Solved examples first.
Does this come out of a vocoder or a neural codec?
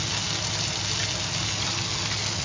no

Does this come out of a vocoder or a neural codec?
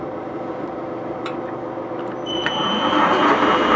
yes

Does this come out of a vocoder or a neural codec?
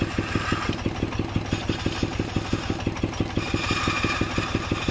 no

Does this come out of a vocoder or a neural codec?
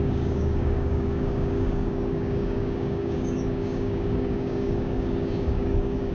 yes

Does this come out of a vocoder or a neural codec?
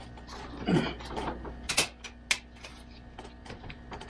no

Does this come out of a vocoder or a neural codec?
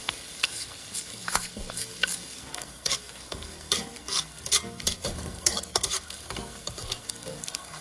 yes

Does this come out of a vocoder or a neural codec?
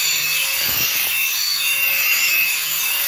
yes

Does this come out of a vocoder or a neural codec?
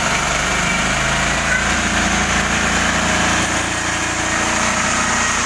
yes